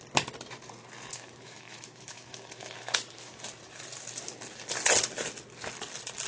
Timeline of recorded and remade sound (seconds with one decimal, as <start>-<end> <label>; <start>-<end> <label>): 0.0-1.1 recorded; 1.1-3.4 remade; 3.4-6.3 recorded